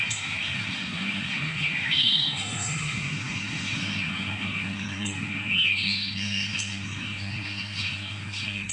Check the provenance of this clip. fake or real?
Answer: fake